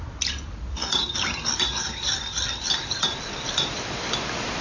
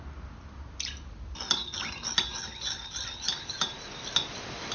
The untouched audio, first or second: second